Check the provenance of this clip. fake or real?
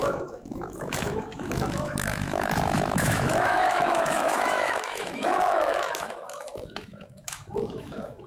fake